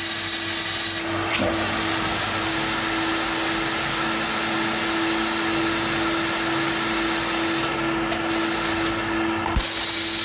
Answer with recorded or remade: recorded